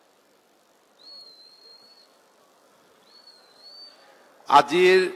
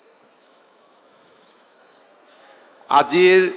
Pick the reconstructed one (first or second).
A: second